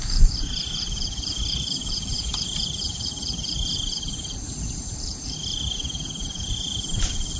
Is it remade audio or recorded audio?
remade